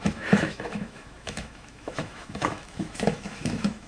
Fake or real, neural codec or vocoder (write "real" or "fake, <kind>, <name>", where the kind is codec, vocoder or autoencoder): fake, autoencoder, DAC-VAE